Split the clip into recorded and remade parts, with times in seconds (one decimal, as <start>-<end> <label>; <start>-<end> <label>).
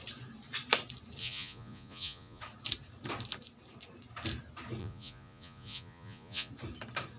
0.0-1.2 recorded; 1.2-2.4 remade; 2.4-4.8 recorded; 4.8-6.5 remade; 6.5-7.2 recorded